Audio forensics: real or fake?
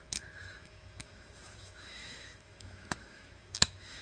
fake